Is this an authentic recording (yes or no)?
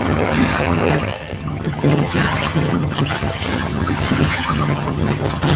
no